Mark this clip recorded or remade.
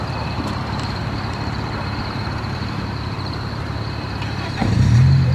remade